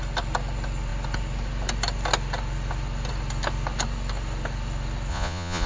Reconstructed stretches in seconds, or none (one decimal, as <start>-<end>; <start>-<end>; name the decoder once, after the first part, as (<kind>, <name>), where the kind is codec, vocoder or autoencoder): 5.1-5.7 (vocoder, Vocos)